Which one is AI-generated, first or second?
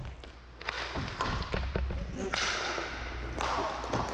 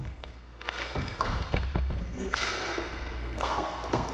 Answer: second